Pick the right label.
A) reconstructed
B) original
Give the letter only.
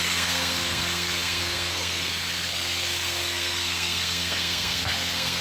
A